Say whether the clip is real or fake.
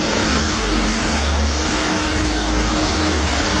fake